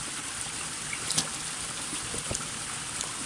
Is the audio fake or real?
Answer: real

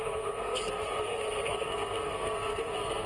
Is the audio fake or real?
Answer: fake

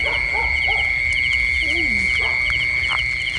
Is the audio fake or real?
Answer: real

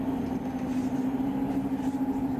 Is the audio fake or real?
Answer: real